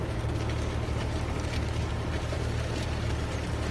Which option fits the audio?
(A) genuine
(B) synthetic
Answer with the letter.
A